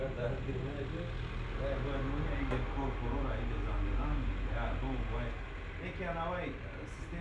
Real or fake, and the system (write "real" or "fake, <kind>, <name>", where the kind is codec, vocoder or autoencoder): real